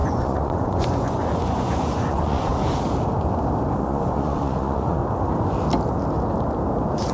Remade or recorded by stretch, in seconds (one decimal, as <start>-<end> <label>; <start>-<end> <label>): 0.0-2.5 remade; 2.5-3.8 recorded; 3.8-5.0 remade; 5.0-7.1 recorded